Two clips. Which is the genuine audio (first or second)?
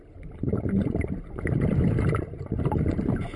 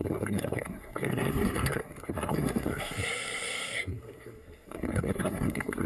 first